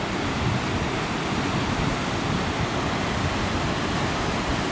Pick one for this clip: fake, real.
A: real